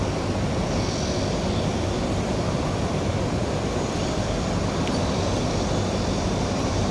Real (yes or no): no